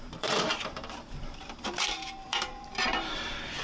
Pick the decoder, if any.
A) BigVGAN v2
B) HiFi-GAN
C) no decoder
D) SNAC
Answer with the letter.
A